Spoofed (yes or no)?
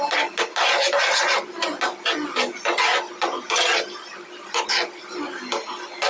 no